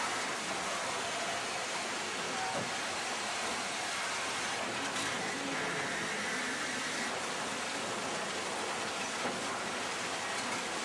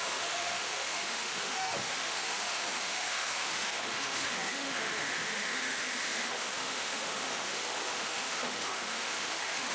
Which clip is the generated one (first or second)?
second